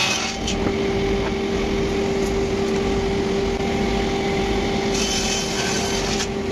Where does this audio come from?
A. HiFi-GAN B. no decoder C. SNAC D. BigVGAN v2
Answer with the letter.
B